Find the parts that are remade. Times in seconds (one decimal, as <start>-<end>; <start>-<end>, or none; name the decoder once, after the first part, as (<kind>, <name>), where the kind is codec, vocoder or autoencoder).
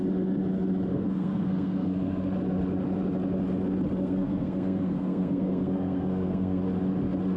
0.9-2.3 (codec, SNAC); 4.0-6.6